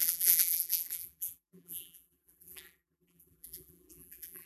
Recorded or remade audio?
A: remade